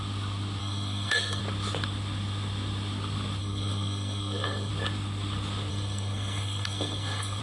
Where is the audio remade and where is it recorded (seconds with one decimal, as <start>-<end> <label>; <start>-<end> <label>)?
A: 0.0-0.6 recorded; 0.6-1.4 remade; 1.4-3.4 recorded; 3.4-4.7 remade; 4.7-5.7 recorded; 5.7-7.4 remade